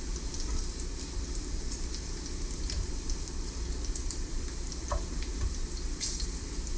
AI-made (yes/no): yes